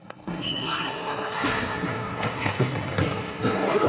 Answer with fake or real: fake